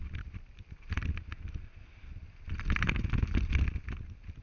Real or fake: real